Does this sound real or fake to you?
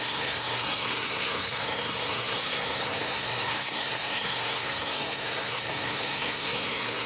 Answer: fake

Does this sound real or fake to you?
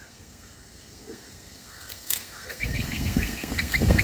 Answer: fake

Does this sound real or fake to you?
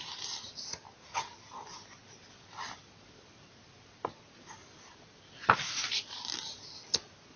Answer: real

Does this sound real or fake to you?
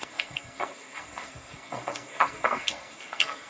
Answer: fake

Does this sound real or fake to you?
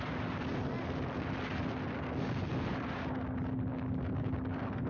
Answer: real